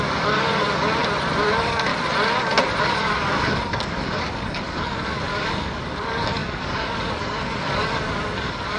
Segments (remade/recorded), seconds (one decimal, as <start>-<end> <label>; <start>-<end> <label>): 0.0-1.0 remade; 1.0-1.5 recorded; 1.5-1.9 remade; 1.9-2.8 recorded; 2.8-8.8 remade